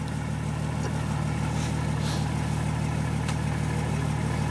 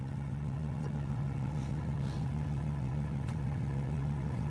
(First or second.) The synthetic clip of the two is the second